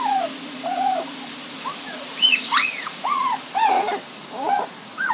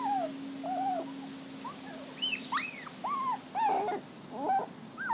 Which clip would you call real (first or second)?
second